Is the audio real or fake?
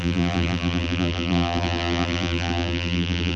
fake